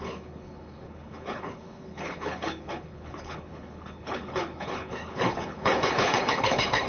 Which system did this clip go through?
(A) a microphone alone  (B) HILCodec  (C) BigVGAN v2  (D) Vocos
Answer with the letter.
B